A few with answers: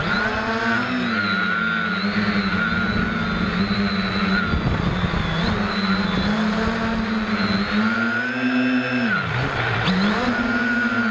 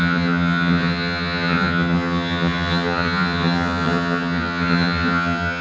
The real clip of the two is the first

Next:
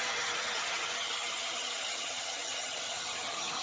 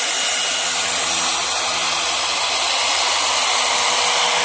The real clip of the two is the second